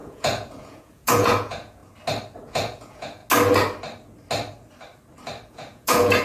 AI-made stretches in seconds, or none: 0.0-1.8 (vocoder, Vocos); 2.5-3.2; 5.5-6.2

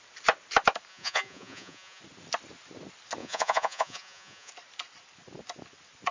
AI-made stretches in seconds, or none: 0.9-2.0 (vocoder, Vocos); 3.2-4.5

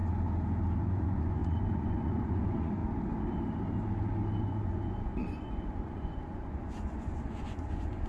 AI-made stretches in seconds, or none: 0.8-2.8 (vocoder, Vocos); 4.4-8.1

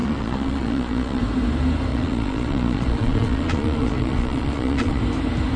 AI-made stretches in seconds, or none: 0.0-1.2 (vocoder, Vocos); 1.9-5.0

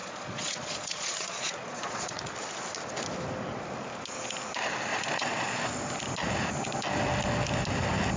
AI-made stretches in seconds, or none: 0.0-2.3 (vocoder, Vocos); 4.9-5.7

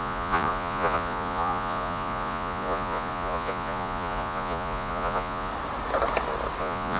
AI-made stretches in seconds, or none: 0.0-5.5 (vocoder, Vocos); 6.6-7.0

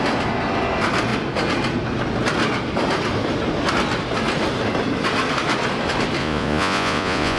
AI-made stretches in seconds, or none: 6.2-7.4 (vocoder, Vocos)

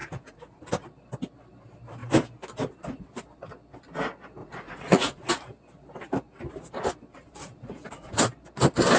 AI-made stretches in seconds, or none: 0.0-0.6 (vocoder, Vocos); 4.4-5.3; 7.4-8.2